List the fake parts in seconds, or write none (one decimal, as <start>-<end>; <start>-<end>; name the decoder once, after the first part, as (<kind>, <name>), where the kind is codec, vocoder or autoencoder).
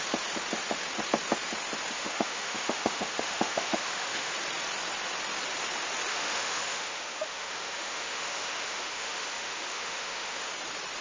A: 1.9-4.3 (autoencoder, DAC-VAE); 6.1-10.5